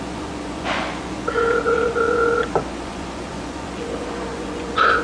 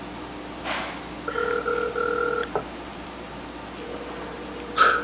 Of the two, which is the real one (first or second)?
second